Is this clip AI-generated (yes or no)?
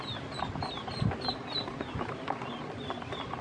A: no